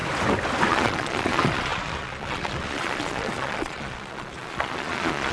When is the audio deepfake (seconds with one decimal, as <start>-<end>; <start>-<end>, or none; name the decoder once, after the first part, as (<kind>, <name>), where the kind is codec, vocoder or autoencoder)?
0.7-5.3 (vocoder, Vocos)